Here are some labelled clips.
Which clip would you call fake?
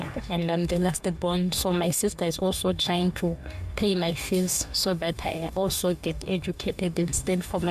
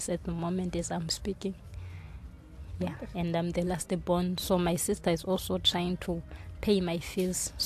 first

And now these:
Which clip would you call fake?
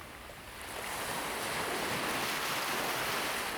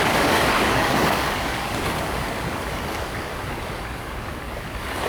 second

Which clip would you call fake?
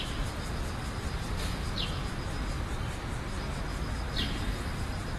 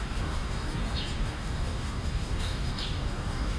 second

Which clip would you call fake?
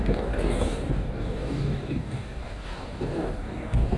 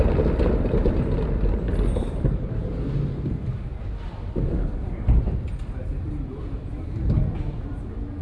first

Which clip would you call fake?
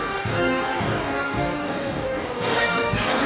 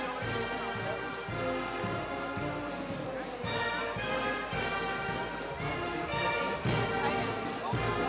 first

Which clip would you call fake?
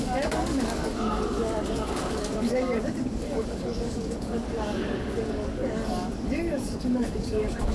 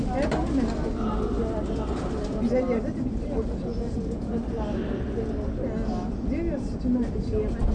first